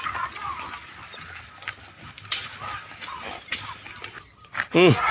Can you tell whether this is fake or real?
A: real